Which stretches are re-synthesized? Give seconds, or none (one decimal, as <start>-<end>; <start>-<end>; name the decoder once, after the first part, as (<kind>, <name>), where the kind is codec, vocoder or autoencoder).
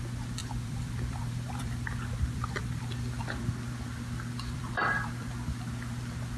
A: 0.4-2.8 (vocoder, BigVGAN v2); 3.9-5.3